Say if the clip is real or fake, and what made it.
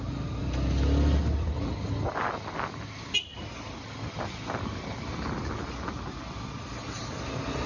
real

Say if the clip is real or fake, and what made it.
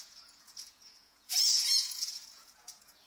fake, vocoder, Vocos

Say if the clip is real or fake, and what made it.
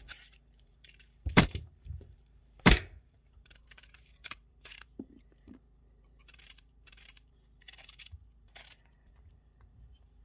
fake, vocoder, BigVGAN v2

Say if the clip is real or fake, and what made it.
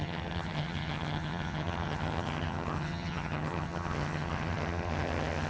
fake, vocoder, HiFi-GAN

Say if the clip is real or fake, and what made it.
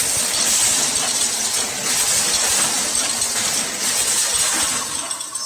real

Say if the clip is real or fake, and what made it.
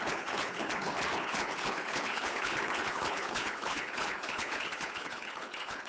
fake, codec, HILCodec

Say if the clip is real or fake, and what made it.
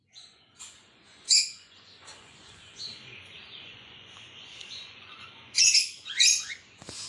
fake, vocoder, Vocos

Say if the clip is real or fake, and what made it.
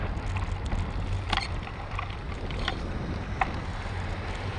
real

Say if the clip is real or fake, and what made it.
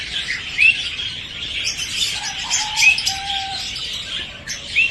fake, vocoder, BigVGAN v2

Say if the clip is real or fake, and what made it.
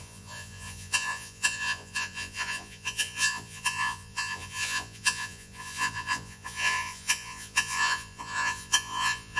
fake, vocoder, Vocos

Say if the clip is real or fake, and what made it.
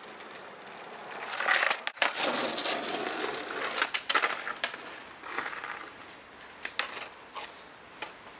real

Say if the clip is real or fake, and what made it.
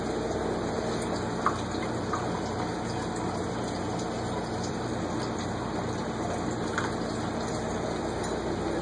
real